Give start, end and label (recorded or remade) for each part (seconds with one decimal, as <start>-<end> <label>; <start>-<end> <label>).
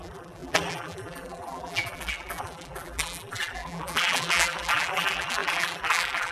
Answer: 0.0-6.3 remade